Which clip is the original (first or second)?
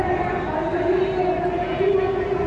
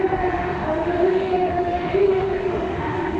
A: first